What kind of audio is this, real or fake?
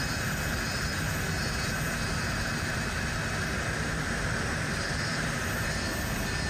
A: real